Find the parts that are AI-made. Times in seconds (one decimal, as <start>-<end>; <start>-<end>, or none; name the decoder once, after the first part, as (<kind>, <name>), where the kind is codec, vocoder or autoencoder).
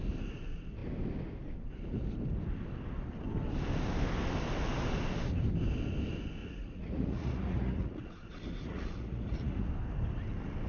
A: 6.4-9.7 (vocoder, Vocos)